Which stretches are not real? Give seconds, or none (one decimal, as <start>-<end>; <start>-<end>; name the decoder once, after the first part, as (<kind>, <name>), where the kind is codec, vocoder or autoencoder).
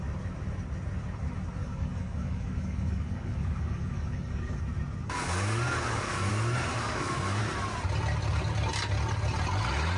1.6-4.6 (codec, DAC); 5.0-6.3; 6.7-7.4